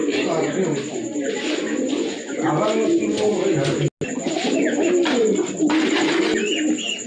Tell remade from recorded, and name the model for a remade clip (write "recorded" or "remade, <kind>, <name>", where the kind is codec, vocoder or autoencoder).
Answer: recorded